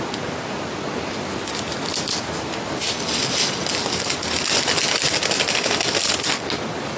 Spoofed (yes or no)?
no